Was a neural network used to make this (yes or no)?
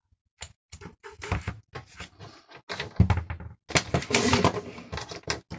no